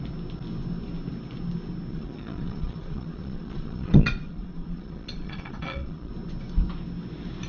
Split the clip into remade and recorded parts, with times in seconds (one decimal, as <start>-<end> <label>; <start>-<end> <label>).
0.0-1.9 recorded; 1.9-6.1 remade; 6.1-7.5 recorded